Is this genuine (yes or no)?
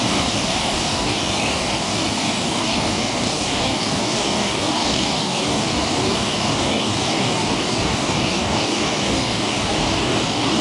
no